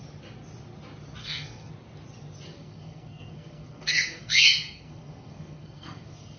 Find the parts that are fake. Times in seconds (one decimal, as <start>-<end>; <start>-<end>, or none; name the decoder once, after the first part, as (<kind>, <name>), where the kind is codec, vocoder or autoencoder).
1.2-1.7 (codec, SNAC); 2.6-6.4